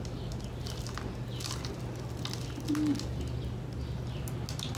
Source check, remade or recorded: recorded